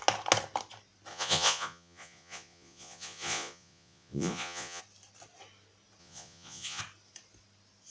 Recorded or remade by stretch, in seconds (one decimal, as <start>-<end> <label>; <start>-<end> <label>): 0.0-1.1 recorded; 1.1-4.8 remade; 4.8-6.0 recorded; 6.0-6.8 remade; 6.8-7.9 recorded